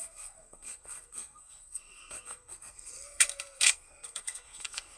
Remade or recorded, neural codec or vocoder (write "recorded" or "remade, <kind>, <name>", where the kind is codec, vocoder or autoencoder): remade, codec, SNAC